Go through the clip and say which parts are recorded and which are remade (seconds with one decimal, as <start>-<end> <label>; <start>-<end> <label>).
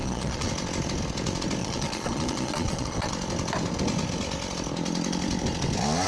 0.0-0.5 remade; 0.5-1.6 recorded; 1.6-3.1 remade; 3.1-6.1 recorded